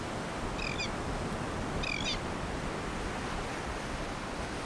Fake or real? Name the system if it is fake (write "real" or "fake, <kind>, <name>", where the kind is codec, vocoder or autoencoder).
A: real